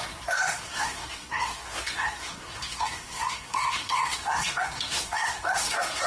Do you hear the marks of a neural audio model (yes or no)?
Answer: yes